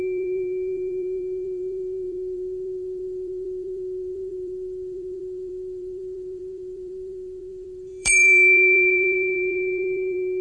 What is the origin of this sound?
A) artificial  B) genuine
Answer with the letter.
A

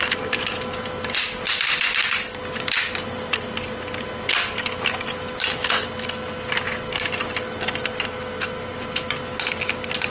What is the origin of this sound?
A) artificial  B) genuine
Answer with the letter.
B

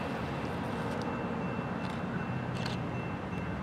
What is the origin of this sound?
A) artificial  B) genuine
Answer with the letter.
B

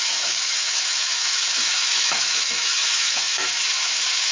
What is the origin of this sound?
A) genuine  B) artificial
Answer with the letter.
B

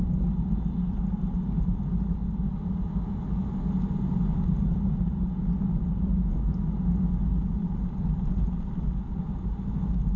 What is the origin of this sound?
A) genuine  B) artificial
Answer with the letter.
A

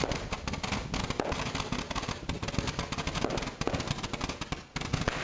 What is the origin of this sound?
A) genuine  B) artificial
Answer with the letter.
A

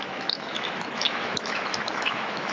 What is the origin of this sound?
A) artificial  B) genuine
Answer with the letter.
A